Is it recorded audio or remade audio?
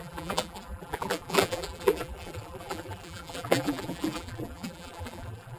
remade